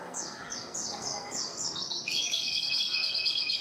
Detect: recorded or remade remade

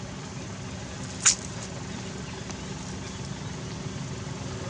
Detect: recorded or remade recorded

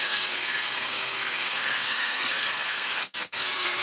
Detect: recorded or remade remade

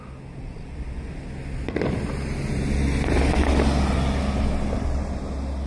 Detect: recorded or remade recorded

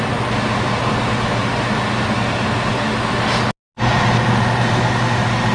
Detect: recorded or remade recorded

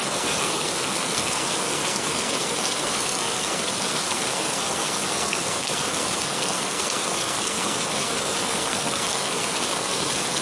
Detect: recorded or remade remade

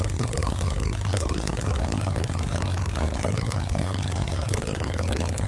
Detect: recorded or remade remade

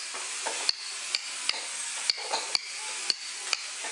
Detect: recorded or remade recorded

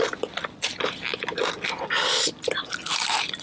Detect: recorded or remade recorded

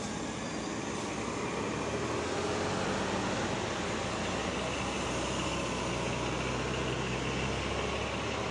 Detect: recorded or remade recorded